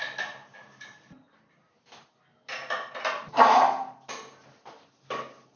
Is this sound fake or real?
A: real